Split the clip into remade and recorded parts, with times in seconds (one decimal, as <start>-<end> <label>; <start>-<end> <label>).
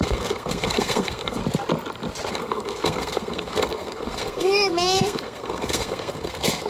0.0-1.4 remade; 1.4-2.3 recorded; 2.3-6.7 remade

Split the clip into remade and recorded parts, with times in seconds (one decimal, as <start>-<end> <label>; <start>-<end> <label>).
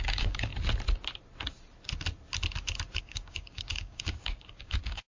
0.0-0.5 remade; 0.5-3.0 recorded; 3.0-5.2 remade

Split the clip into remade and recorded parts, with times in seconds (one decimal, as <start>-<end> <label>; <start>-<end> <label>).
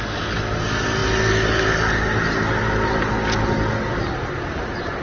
0.0-5.0 recorded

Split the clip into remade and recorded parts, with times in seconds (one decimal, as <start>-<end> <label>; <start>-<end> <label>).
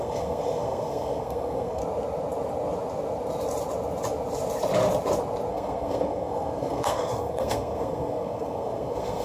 0.0-1.8 remade; 1.8-5.5 recorded; 5.5-9.2 remade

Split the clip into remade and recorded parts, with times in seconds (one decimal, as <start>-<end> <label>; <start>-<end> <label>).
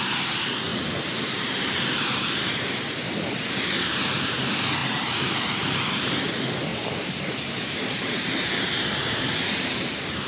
0.0-10.3 remade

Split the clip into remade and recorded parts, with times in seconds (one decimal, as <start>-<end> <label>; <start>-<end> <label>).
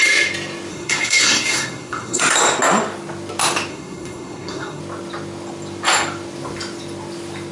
0.0-0.7 recorded; 0.7-2.2 remade; 2.2-3.7 recorded; 3.7-4.8 remade; 4.8-7.5 recorded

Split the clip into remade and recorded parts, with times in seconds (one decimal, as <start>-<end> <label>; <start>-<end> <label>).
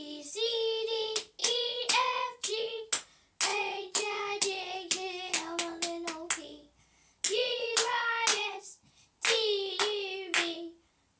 0.0-1.4 recorded; 1.4-2.8 remade; 2.8-3.5 recorded; 3.5-4.2 remade; 4.2-7.3 recorded; 7.3-7.8 remade; 7.8-8.3 recorded; 8.3-8.9 remade; 8.9-11.2 recorded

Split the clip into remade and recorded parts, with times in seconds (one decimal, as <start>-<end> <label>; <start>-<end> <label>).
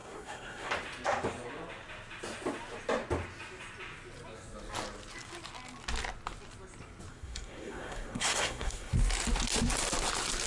0.0-0.7 remade; 0.7-7.1 recorded; 7.1-8.9 remade; 8.9-10.5 recorded